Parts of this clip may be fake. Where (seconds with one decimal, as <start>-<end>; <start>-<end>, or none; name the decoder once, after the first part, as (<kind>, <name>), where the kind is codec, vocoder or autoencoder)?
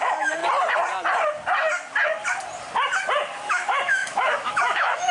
0.0-0.4 (autoencoder, DAC-VAE); 3.5-5.1